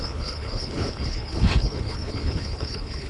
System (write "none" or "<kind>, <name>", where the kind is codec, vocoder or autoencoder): codec, HILCodec